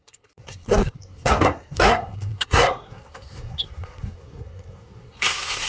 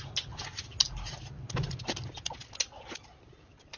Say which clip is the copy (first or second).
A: first